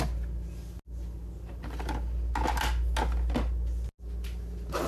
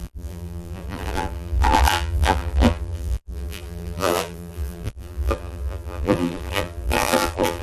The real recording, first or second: first